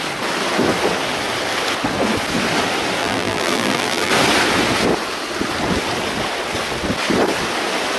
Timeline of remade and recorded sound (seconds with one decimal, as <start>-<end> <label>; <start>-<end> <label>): 0.0-3.0 recorded; 3.0-4.1 remade; 4.1-8.0 recorded